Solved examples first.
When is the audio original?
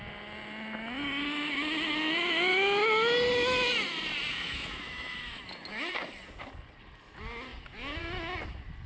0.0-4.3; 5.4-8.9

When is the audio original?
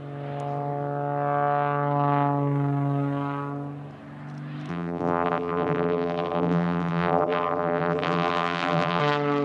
0.0-4.7; 9.0-9.4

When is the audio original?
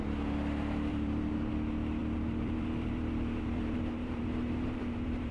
0.0-0.9; 1.5-2.0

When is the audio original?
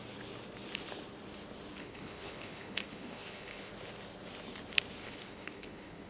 0.0-1.8; 3.7-5.0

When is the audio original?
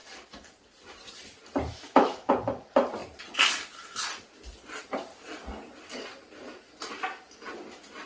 0.0-1.7; 2.3-8.1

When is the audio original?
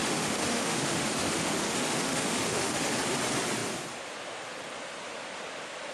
2.9-5.9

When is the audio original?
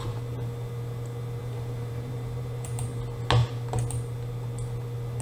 0.0-1.4; 2.8-5.2